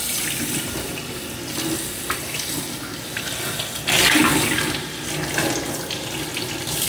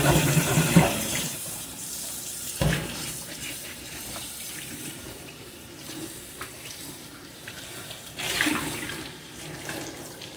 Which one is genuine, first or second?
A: first